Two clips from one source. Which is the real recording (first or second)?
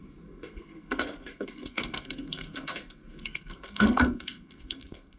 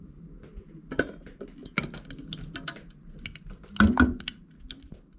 second